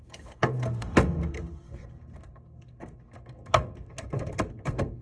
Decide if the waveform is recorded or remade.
remade